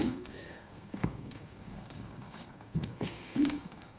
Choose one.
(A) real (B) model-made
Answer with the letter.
B